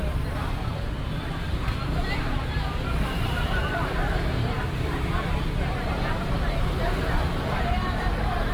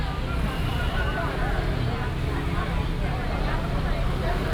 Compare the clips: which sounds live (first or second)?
second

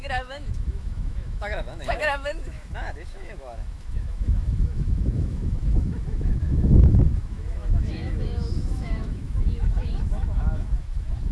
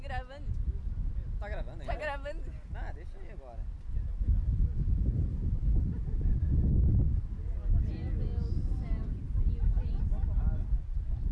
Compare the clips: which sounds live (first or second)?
second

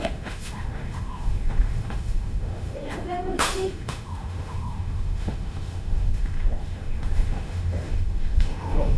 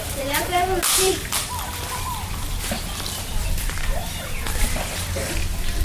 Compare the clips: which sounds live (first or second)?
second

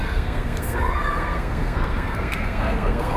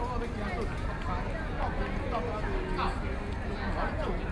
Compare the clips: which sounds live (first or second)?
second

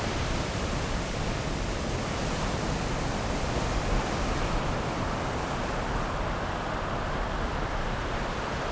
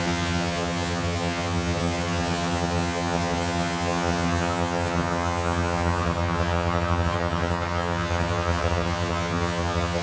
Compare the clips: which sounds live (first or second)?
first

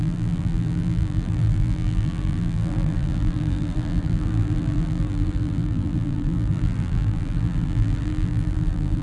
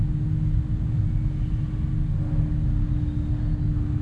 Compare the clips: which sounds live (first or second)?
second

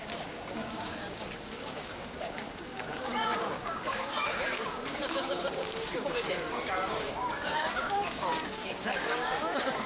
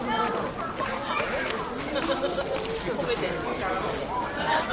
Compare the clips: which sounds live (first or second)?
second